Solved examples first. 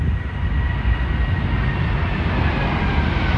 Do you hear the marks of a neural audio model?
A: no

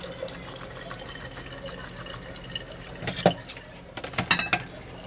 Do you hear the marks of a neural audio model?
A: no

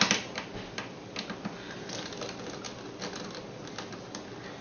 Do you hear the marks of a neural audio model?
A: no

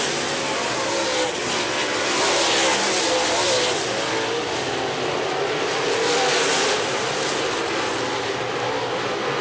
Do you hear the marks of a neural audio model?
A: no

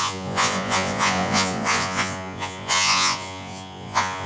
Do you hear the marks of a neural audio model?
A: yes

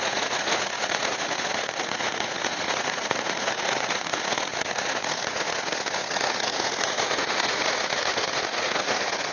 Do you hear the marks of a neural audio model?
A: yes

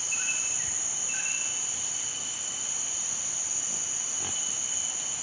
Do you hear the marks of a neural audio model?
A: no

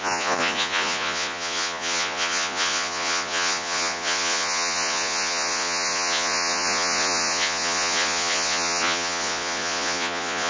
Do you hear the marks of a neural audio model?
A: yes